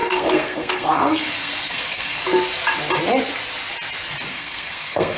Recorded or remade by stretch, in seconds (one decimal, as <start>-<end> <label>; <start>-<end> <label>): 0.0-2.2 remade; 2.2-4.3 recorded; 4.3-5.2 remade